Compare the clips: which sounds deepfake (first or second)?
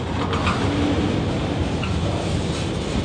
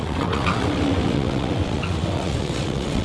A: second